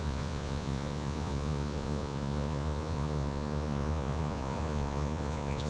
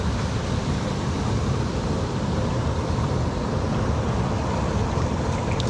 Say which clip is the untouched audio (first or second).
second